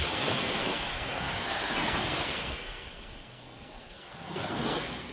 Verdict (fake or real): fake